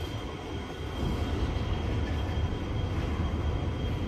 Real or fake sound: real